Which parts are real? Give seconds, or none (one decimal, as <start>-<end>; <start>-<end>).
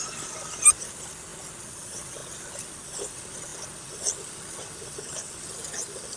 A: 0.0-6.2